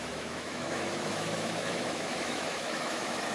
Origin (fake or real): fake